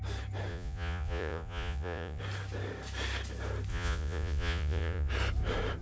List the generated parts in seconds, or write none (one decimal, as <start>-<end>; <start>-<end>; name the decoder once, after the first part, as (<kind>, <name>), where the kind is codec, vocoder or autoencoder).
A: 0.5-2.2 (vocoder, Vocos); 3.7-5.1